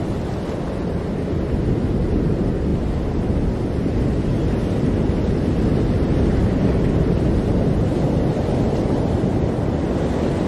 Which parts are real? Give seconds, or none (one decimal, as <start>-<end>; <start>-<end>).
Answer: 0.0-10.5